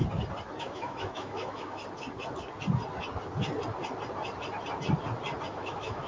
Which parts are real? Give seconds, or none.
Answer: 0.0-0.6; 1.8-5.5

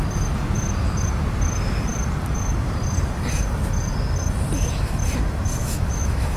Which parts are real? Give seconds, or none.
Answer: 0.0-5.6

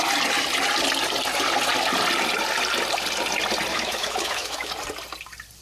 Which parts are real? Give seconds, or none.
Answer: 0.0-3.7; 4.7-5.6

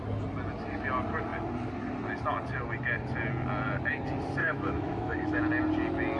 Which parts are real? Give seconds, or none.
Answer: 0.0-4.4; 5.4-6.2

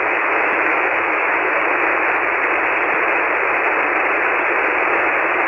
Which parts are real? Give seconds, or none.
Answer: 1.6-4.9

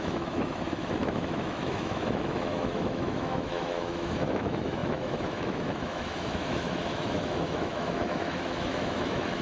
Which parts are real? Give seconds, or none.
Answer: none